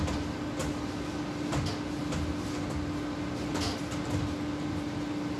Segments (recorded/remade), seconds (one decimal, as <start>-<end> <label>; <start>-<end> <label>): 0.0-5.4 recorded